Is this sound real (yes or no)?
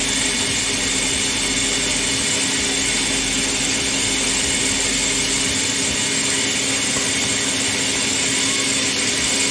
yes